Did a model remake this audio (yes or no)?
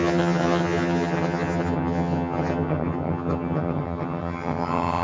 yes